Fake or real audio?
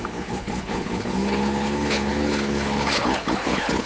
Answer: fake